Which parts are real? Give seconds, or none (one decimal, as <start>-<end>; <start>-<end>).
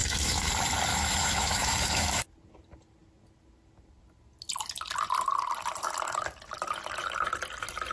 0.5-0.9; 2.2-7.9